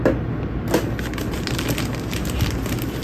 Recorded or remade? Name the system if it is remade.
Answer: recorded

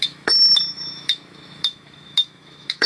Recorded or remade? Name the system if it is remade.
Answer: remade, autoencoder, DAC-VAE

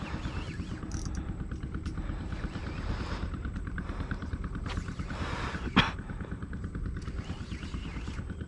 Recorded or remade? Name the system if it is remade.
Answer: recorded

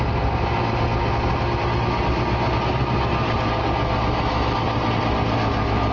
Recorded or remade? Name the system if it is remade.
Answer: recorded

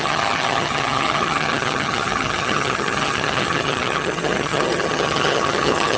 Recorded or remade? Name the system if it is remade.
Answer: remade, vocoder, HiFi-GAN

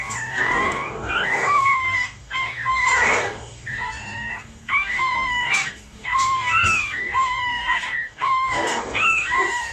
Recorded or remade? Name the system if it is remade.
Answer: remade, codec, DAC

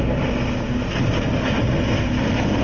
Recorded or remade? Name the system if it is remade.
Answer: recorded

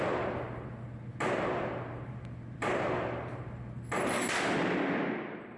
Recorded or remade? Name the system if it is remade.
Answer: remade, vocoder, BigVGAN v2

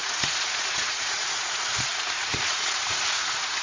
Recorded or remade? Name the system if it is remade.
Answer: remade, vocoder, Vocos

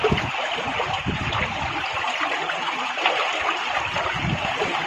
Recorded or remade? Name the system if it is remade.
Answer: remade, vocoder, BigVGAN v2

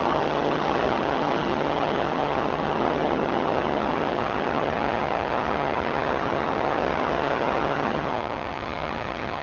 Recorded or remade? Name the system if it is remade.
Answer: remade, vocoder, HiFi-GAN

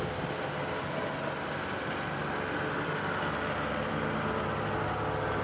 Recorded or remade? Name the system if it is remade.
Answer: recorded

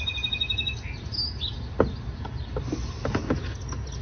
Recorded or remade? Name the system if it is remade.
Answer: recorded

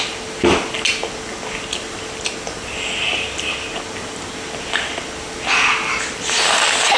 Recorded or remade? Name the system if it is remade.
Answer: recorded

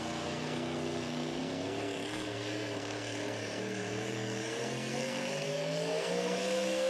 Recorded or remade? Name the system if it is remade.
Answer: remade, codec, SNAC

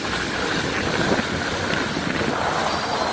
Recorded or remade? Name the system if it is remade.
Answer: recorded